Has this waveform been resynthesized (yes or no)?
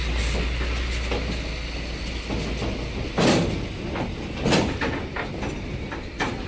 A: no